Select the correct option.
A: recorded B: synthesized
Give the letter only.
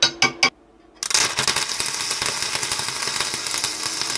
A